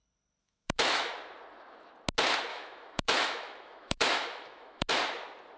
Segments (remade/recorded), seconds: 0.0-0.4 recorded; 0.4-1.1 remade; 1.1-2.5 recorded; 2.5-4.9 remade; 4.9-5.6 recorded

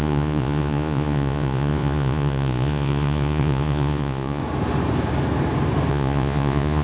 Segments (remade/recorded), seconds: 0.0-4.4 remade; 4.4-5.9 recorded; 5.9-6.8 remade